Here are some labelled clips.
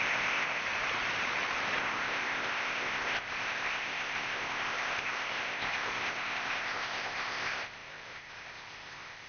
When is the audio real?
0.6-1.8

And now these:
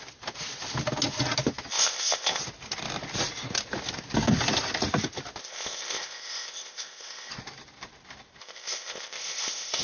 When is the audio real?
0.0-1.7; 2.4-5.4; 7.3-8.4